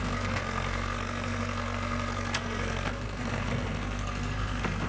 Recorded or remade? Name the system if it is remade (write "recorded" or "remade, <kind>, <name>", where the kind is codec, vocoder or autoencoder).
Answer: remade, codec, SNAC